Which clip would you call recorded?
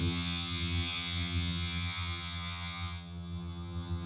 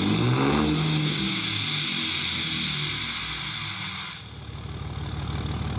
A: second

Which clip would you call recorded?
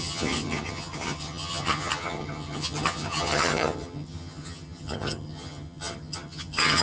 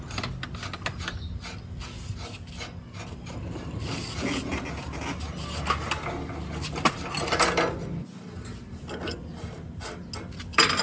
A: second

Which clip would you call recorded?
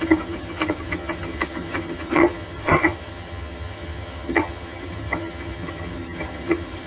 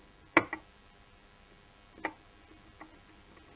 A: second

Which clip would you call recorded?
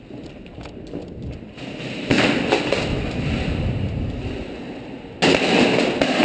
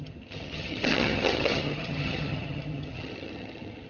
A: first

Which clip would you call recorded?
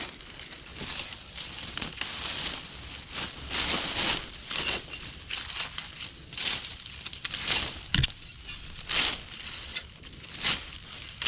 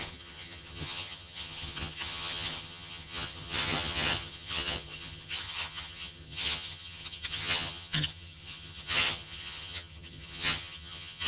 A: first